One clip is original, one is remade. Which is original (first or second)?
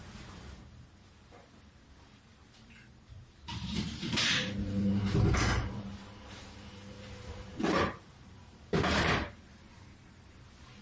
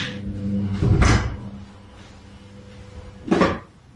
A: second